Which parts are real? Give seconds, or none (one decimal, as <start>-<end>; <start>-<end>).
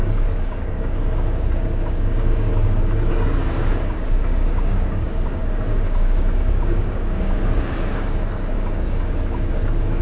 2.5-3.1